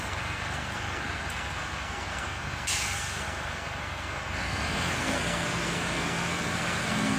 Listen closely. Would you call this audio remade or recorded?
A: remade